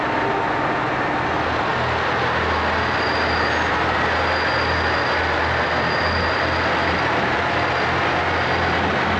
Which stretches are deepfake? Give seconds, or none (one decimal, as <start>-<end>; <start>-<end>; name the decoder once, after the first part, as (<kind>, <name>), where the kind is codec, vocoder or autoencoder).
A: 6.8-7.4 (vocoder, BigVGAN v2)